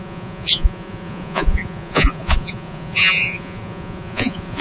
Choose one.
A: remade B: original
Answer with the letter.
A